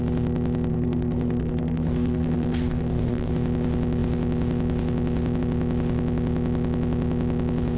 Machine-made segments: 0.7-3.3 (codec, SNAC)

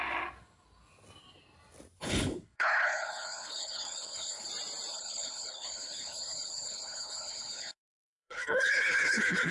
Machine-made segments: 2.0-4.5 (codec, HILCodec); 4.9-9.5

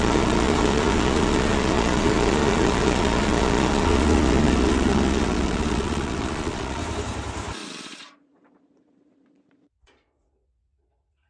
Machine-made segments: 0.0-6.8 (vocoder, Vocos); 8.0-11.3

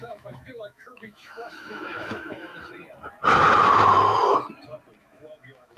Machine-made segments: 0.0-2.5 (autoencoder, DAC-VAE); 5.0-5.8

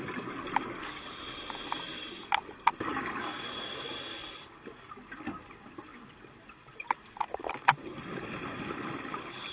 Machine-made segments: none